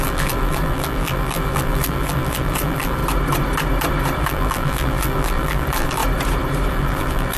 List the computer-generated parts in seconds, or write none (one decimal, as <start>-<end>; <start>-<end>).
0.0-3.0; 4.2-6.0; 6.7-7.4